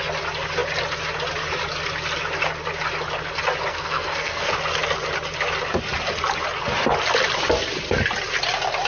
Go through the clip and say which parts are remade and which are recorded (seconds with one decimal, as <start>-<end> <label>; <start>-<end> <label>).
0.0-3.7 recorded; 3.7-4.5 remade; 4.5-8.9 recorded